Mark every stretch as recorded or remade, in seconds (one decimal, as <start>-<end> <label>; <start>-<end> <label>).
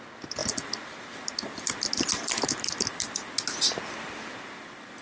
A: 0.0-5.0 recorded